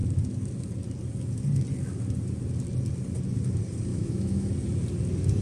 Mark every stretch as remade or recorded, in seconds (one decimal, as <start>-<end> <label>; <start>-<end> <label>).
0.0-3.9 recorded; 3.9-4.5 remade; 4.5-5.4 recorded